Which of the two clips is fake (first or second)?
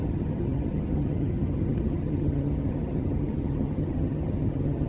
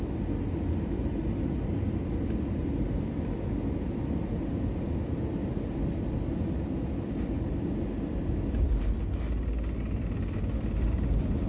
first